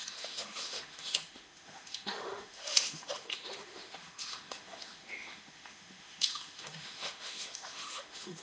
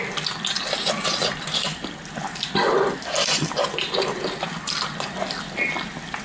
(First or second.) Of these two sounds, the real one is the second